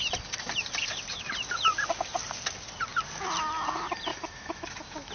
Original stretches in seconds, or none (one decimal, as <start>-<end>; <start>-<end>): 0.0-4.1